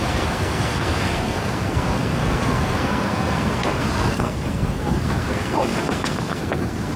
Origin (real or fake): fake